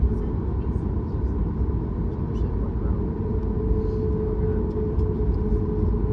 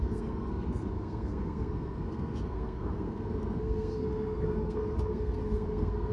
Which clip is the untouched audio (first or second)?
first